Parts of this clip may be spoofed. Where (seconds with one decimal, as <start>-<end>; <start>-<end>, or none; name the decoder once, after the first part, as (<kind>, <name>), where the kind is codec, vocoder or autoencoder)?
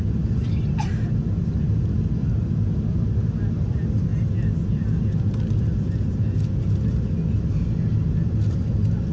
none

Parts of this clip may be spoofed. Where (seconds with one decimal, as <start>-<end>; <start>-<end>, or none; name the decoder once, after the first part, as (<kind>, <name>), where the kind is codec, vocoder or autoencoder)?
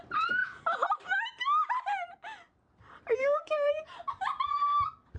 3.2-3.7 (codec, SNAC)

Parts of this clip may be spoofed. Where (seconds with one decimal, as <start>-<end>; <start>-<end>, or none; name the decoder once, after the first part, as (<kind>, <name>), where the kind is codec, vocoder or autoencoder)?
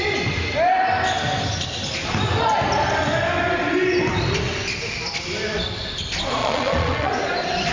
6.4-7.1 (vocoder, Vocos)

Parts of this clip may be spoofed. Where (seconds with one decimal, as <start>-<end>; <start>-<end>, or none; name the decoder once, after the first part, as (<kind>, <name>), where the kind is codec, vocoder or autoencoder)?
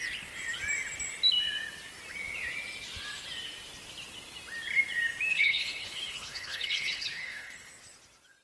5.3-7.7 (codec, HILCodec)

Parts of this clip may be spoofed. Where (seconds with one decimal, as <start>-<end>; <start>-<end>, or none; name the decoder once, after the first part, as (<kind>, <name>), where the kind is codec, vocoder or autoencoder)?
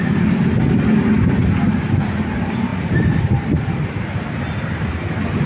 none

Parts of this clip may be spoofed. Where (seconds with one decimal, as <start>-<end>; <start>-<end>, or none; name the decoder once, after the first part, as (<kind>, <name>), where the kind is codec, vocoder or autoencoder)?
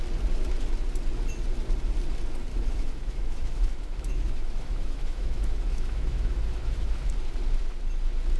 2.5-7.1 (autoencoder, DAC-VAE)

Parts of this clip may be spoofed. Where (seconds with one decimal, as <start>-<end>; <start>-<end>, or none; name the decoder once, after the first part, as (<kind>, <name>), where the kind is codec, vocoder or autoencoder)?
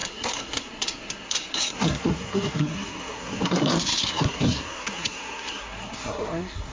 0.0-6.7 (codec, SNAC)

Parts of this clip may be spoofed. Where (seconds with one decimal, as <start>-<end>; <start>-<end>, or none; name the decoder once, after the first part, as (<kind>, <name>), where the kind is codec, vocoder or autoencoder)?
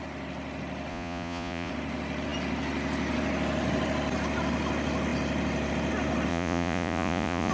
0.9-1.7 (vocoder, Vocos); 6.3-7.5